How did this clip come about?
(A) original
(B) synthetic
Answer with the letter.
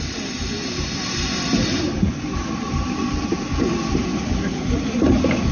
A